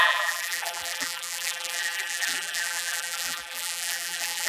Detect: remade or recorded remade